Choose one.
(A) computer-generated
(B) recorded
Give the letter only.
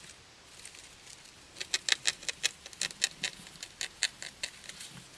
B